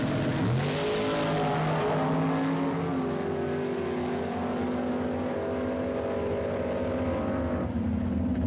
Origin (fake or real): real